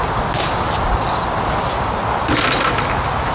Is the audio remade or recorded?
recorded